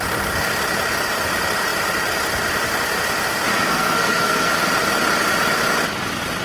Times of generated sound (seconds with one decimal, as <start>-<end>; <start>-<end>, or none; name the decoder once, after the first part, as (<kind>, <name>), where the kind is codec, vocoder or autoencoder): 3.5-4.5 (codec, SNAC)